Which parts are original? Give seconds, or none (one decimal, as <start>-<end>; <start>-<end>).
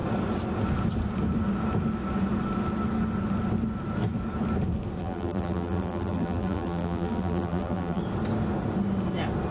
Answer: 0.0-5.0; 8.0-9.5